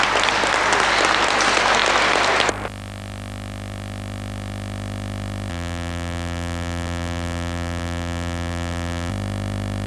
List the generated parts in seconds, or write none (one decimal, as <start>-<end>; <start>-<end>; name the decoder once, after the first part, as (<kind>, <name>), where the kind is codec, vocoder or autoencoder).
5.5-9.1 (vocoder, BigVGAN v2)